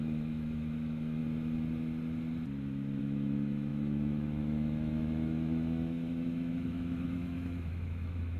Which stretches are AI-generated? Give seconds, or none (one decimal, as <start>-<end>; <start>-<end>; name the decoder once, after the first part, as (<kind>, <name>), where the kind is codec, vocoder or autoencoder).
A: 0.0-1.2 (autoencoder, DAC-VAE); 3.0-8.4